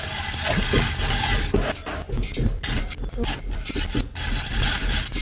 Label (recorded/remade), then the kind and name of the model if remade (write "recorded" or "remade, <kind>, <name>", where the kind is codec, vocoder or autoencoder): recorded